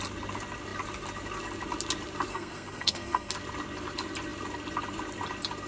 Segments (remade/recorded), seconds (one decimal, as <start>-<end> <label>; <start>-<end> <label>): 0.0-2.3 recorded; 2.3-3.3 remade; 3.3-5.7 recorded